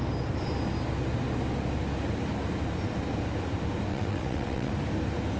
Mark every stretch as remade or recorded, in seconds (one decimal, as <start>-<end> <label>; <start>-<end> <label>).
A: 0.0-3.9 recorded; 3.9-4.7 remade; 4.7-5.4 recorded